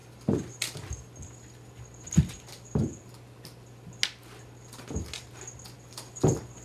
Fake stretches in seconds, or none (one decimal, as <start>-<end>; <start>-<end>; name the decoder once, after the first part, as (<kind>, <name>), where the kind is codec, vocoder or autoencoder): none